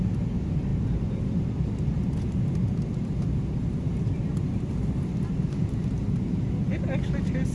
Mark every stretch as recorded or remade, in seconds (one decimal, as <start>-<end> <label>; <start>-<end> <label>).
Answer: 0.0-7.5 recorded